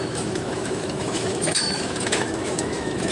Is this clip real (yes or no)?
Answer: no